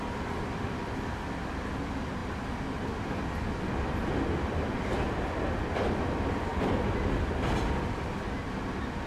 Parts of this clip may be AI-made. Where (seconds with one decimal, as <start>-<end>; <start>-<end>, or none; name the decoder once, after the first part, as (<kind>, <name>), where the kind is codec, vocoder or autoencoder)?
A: none